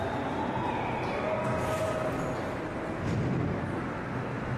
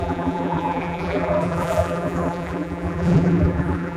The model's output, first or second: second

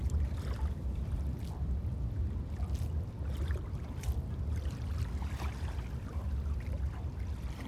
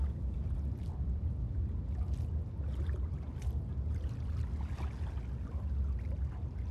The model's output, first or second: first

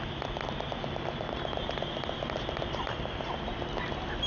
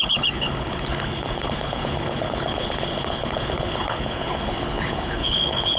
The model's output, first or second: second